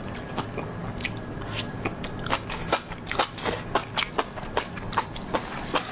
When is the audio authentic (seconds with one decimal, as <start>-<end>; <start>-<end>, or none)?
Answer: 0.8-4.3